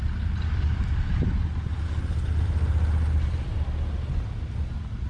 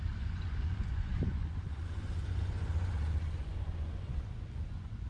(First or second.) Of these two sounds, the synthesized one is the second